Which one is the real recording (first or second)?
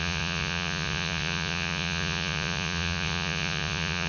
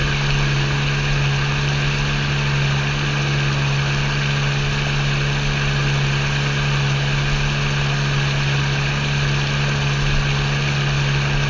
second